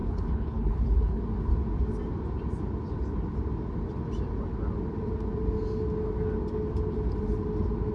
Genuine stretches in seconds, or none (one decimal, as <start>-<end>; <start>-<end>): 1.2-7.9